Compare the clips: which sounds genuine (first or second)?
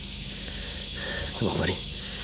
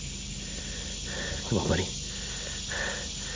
second